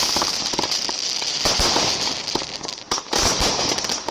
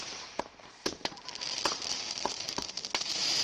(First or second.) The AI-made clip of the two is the second